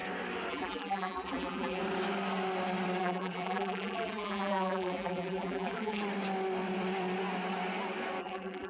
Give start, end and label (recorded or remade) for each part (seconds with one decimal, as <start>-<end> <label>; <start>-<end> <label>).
0.0-0.5 recorded; 0.5-1.8 remade; 1.8-3.0 recorded; 3.0-6.0 remade; 6.0-8.2 recorded; 8.2-8.7 remade